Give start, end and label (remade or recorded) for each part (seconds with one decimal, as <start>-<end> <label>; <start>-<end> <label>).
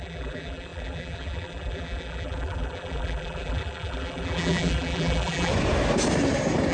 0.0-5.5 remade; 5.5-6.7 recorded